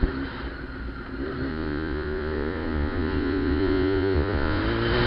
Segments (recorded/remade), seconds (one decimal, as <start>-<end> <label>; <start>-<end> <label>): 0.0-1.5 recorded; 1.5-4.6 remade; 4.6-5.1 recorded